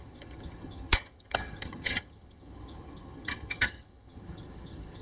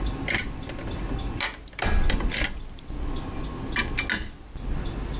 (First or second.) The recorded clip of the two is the second